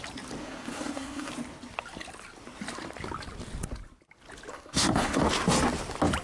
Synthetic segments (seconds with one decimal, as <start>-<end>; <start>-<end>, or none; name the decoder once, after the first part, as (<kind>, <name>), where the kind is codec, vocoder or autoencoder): 0.4-1.3 (codec, SNAC); 4.5-5.2